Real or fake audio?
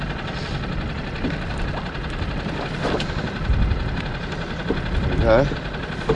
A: real